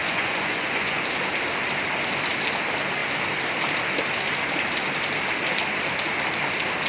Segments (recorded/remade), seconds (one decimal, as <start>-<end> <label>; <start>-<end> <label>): 0.0-1.0 remade; 1.0-6.9 recorded